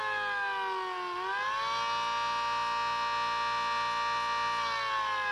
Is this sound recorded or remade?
recorded